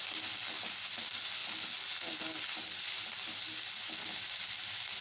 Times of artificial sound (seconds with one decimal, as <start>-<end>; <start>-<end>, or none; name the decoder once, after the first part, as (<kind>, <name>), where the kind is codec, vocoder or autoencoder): none